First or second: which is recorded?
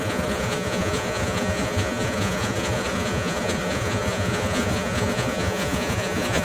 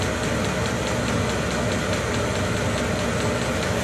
second